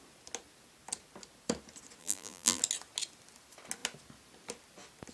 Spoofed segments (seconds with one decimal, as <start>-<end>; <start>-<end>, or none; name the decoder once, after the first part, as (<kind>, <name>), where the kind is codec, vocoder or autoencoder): 2.0-2.6 (vocoder, BigVGAN v2)